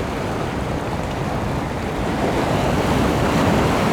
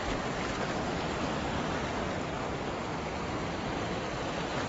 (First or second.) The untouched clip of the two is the second